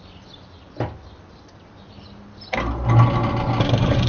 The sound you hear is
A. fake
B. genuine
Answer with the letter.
B